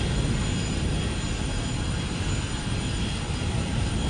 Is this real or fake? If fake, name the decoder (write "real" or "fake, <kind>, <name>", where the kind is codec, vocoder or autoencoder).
real